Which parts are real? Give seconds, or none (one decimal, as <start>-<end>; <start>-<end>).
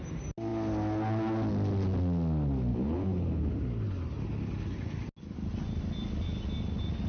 0.0-2.7; 3.5-7.1